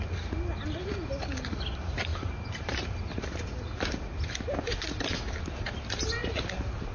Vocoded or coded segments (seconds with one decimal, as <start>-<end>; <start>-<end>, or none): 2.1-3.0